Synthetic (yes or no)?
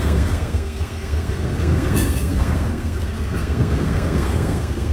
yes